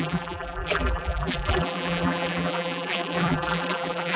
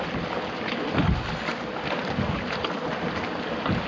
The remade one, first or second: first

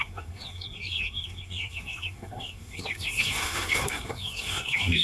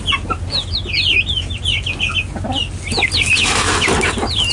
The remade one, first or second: first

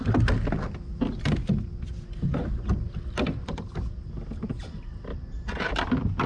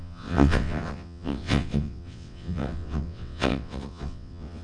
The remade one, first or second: second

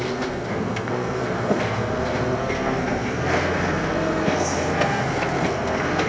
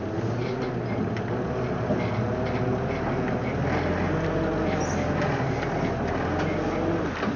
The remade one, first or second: first